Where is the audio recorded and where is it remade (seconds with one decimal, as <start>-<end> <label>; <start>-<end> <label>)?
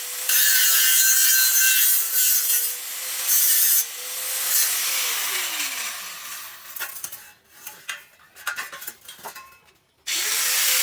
0.0-10.8 recorded